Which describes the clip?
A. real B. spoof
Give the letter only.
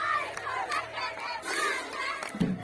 A